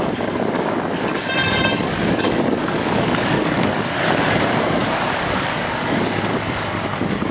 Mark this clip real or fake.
fake